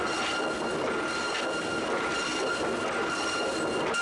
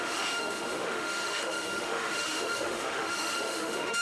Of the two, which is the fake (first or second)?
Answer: second